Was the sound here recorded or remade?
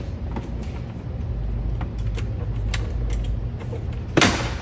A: recorded